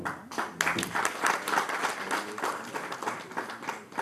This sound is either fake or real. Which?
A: real